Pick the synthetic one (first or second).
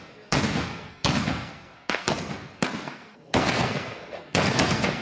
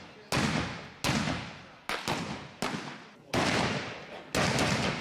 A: first